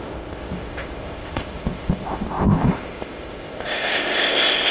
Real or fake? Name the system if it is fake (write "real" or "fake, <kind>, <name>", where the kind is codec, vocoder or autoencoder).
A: fake, codec, ZipCodec